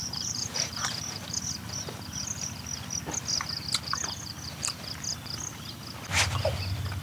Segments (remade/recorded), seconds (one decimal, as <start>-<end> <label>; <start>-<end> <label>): 0.0-0.7 remade; 0.7-7.0 recorded